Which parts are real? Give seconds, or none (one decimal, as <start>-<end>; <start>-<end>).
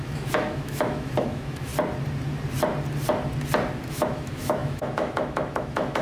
1.7-3.9